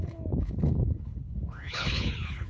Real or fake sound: fake